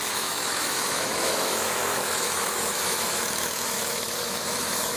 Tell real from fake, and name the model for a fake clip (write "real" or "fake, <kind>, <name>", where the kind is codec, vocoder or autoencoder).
fake, autoencoder, DAC-VAE